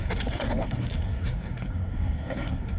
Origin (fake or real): fake